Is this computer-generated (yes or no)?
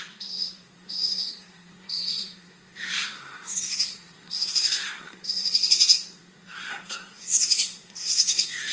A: yes